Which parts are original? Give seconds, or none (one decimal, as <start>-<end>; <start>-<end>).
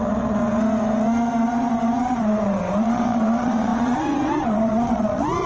0.4-2.1